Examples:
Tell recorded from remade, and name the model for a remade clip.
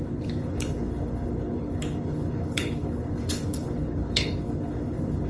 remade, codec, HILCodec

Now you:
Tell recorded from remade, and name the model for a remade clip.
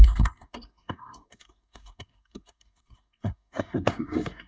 remade, codec, SNAC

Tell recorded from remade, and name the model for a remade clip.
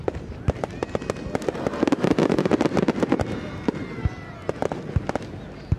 recorded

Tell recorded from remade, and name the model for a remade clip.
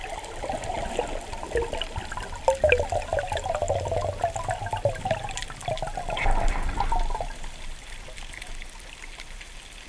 recorded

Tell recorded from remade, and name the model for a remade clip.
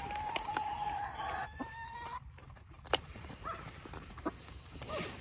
remade, vocoder, BigVGAN v2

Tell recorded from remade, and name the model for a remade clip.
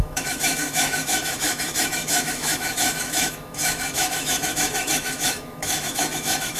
remade, autoencoder, DAC-VAE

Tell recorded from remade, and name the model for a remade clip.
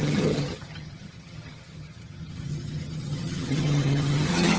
remade, vocoder, HiFi-GAN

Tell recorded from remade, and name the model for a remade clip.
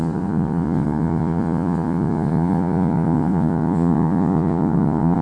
remade, vocoder, Vocos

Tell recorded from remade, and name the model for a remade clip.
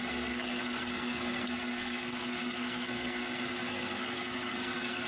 remade, codec, SNAC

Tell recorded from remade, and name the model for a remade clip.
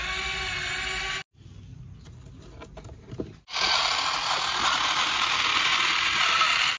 recorded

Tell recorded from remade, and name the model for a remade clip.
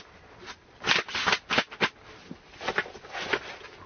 recorded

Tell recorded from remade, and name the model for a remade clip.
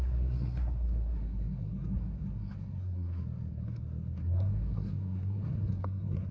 remade, codec, SNAC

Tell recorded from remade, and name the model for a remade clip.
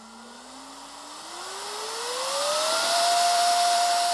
remade, vocoder, BigVGAN v2